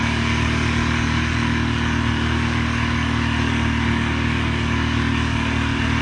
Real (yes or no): no